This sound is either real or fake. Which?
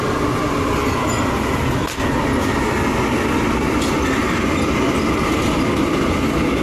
real